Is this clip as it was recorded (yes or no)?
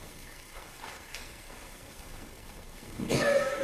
no